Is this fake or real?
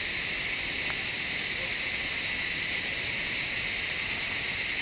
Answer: real